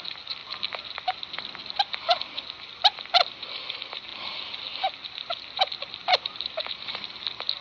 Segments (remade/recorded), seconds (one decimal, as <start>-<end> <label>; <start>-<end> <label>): 0.0-2.1 remade; 2.1-2.7 recorded; 2.7-4.1 remade; 4.1-4.9 recorded; 4.9-7.6 remade